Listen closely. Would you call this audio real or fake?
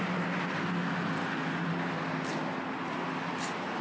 real